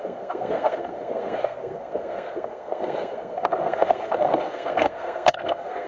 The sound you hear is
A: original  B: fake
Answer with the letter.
B